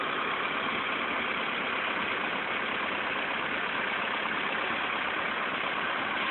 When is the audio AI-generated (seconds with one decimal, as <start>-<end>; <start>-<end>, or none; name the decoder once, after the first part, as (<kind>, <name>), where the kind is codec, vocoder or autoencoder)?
none